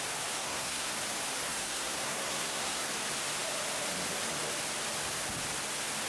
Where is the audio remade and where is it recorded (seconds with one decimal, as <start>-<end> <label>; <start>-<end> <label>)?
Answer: 0.0-0.4 recorded; 0.4-0.9 remade; 0.9-1.5 recorded; 1.5-2.9 remade; 2.9-6.1 recorded